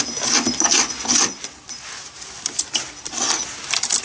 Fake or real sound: real